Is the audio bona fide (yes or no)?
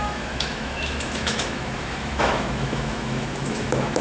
no